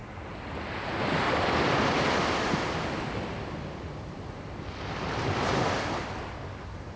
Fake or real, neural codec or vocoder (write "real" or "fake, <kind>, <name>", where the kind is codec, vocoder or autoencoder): real